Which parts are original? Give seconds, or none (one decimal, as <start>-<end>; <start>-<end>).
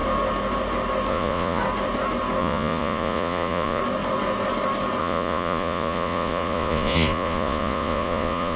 0.0-1.1; 1.6-2.4; 3.8-5.0